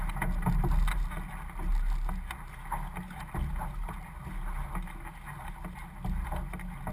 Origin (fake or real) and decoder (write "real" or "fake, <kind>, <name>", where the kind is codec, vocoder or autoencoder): real